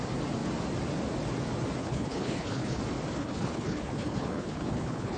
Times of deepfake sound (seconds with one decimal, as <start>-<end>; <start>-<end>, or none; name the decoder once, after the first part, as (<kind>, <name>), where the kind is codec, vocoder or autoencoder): 1.8-2.8 (codec, HILCodec); 3.2-5.2